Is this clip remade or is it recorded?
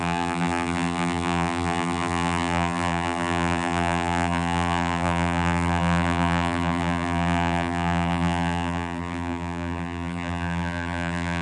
remade